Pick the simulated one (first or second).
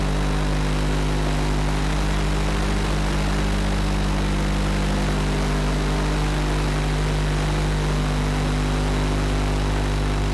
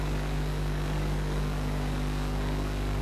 second